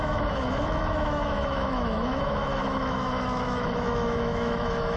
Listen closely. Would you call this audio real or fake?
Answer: fake